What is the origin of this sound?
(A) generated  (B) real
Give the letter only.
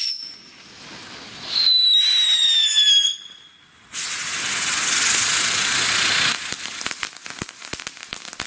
B